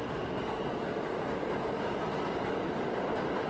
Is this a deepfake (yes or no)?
no